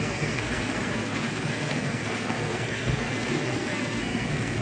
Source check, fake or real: fake